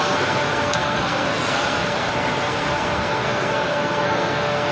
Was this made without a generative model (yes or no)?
no